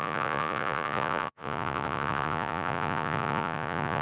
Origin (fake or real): fake